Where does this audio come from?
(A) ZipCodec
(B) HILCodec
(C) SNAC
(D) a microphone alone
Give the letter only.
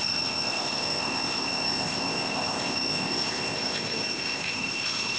A